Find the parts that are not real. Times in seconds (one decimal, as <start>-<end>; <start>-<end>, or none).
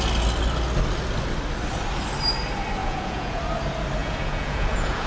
2.8-3.4; 4.0-5.1